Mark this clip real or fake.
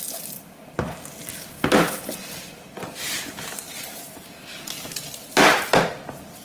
real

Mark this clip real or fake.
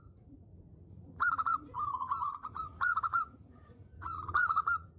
fake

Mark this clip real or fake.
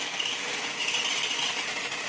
real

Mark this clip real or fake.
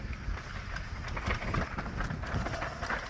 real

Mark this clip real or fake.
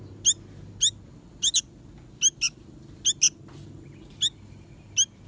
real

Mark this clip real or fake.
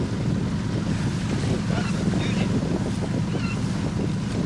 real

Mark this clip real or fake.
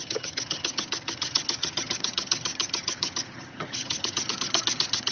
fake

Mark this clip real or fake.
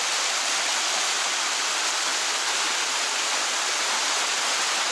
real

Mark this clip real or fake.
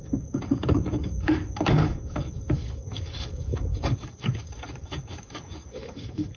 fake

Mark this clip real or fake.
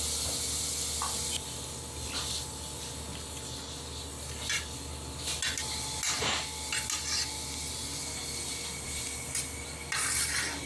real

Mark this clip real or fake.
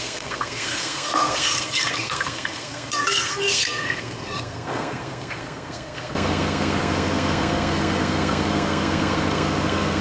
fake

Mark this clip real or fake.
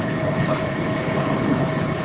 fake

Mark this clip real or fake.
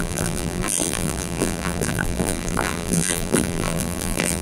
fake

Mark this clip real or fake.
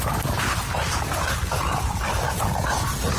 real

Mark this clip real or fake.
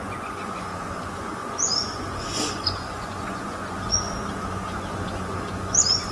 fake